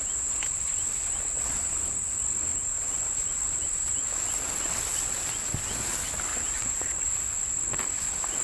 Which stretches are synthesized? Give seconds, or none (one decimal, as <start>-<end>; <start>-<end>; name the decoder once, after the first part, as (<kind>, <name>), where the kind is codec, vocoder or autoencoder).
2.5-4.2 (vocoder, BigVGAN v2); 6.3-7.1